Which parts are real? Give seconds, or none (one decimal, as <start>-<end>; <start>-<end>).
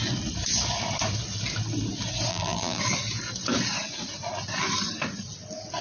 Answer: 0.0-2.3; 2.8-5.8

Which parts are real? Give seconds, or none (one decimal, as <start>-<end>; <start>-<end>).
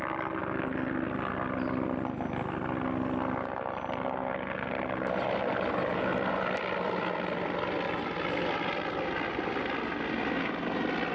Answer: 0.0-11.1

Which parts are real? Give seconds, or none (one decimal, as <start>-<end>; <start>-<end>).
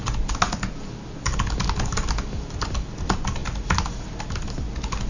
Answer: 0.0-5.1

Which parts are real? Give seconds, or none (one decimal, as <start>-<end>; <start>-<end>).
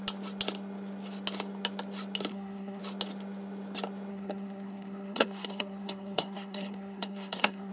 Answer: 0.0-2.3; 2.8-4.1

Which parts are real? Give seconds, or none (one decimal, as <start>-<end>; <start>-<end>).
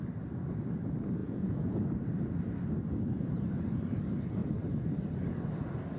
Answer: 0.0-1.2; 1.8-6.0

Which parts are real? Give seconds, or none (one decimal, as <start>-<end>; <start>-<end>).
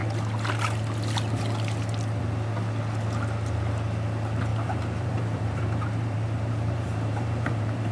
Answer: 0.0-4.5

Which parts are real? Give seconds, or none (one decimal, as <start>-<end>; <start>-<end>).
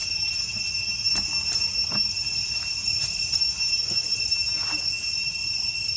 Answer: 0.0-2.8; 3.4-6.0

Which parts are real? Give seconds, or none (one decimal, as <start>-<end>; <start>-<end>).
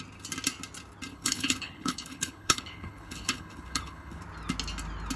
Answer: 0.0-1.1; 4.2-5.2